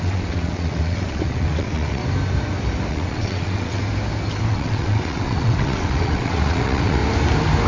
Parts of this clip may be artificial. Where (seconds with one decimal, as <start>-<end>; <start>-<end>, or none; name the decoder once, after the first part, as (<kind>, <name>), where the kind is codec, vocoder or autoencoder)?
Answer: 0.0-2.0 (vocoder, WaveNeXt); 2.9-3.8; 4.5-7.0